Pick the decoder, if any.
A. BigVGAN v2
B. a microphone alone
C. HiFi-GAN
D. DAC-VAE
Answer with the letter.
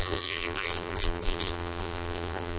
A